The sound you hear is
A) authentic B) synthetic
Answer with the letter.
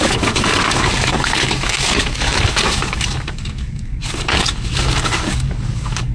B